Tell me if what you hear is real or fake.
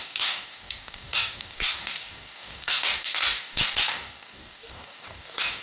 fake